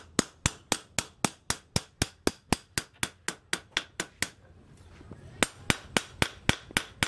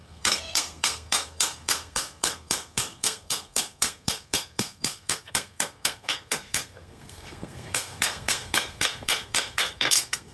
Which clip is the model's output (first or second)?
second